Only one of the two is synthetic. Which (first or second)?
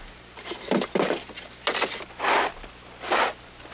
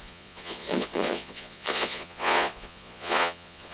second